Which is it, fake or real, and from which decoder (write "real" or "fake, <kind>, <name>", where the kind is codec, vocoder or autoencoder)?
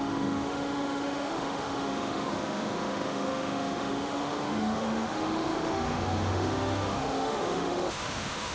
fake, autoencoder, DAC-VAE